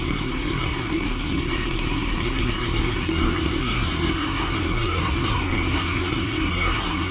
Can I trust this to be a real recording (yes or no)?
no